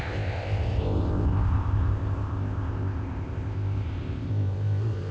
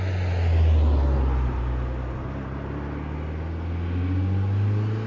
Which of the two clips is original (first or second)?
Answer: second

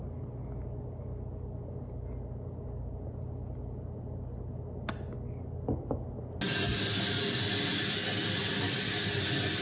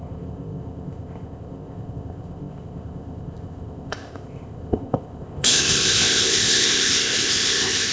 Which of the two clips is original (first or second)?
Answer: first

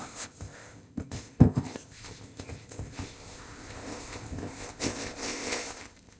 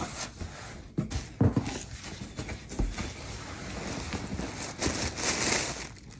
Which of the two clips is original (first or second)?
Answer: second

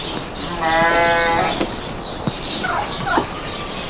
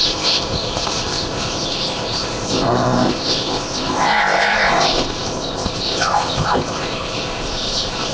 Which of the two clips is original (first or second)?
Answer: first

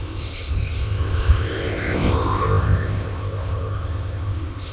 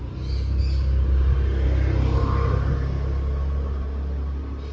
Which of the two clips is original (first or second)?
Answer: second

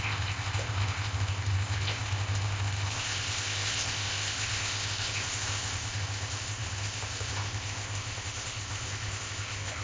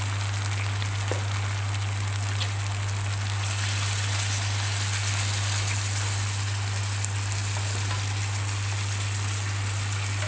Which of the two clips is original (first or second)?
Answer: second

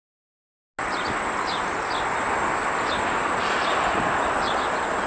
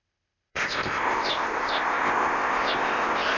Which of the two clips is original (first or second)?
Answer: first